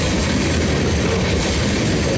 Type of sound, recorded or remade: recorded